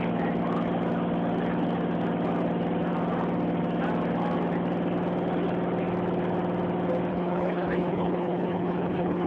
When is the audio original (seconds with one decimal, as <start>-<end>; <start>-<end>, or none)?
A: 0.0-7.1